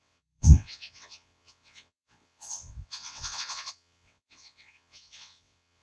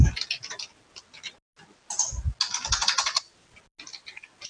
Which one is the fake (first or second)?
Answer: first